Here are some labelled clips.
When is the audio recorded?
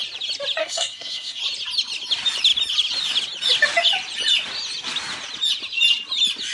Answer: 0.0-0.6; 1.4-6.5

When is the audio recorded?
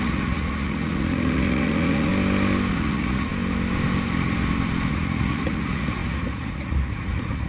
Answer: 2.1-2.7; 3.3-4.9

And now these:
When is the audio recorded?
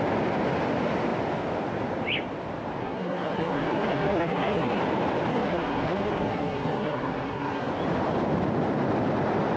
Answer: 0.0-2.8; 4.8-5.3; 7.7-9.6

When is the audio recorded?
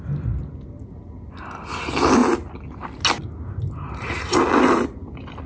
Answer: 0.0-5.5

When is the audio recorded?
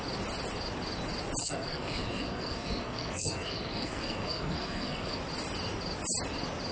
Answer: 0.0-1.4; 5.2-6.7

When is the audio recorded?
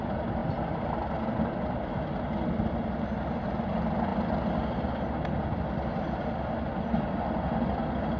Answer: 0.0-8.2